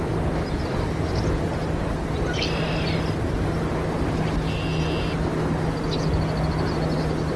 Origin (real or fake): real